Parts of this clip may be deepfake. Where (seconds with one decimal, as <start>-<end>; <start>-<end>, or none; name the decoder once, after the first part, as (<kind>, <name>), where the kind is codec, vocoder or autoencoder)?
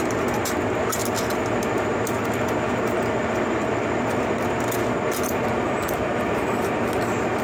none